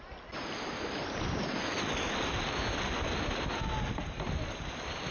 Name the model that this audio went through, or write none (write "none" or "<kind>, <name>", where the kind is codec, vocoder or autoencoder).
none